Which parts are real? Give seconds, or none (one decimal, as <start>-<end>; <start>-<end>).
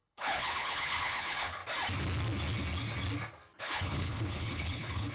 1.6-3.6